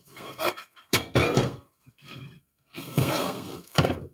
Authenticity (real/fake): fake